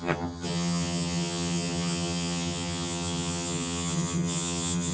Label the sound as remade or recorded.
remade